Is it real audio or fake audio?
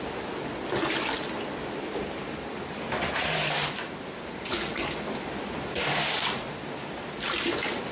real